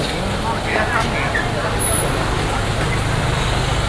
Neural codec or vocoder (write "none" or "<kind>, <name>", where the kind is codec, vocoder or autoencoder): none